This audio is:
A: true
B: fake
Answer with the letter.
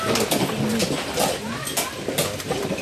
A